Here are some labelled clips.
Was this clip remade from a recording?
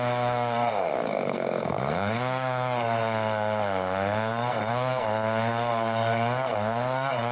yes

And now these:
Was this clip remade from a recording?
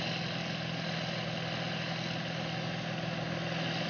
no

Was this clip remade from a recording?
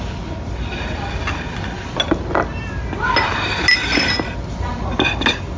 no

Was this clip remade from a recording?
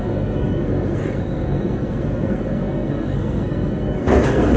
yes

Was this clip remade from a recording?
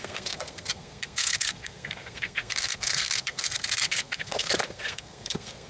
yes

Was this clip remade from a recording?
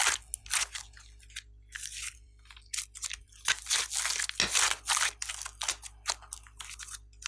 no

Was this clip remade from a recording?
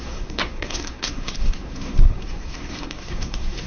yes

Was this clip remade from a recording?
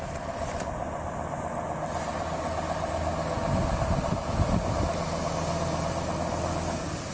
no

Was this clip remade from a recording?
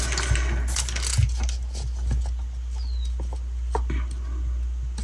no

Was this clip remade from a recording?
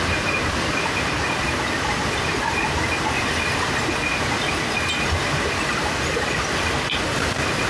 no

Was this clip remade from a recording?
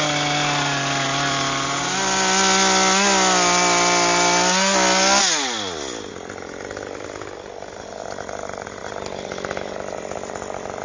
no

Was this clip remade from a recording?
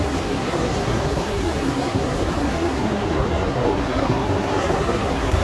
yes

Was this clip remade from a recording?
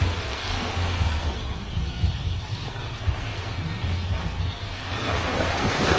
yes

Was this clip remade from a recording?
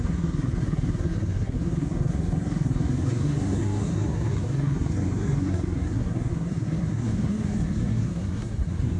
yes